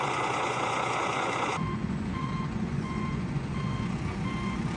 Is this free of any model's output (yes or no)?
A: no